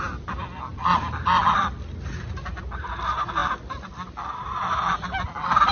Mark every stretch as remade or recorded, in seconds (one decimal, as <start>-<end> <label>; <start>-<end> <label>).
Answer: 0.0-0.7 recorded; 0.7-2.3 remade; 2.3-5.7 recorded